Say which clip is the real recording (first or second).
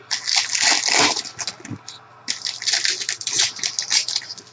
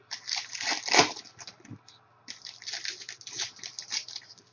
first